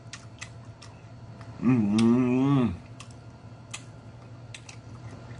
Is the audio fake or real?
real